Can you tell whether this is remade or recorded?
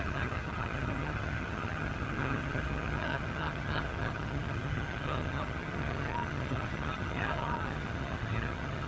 remade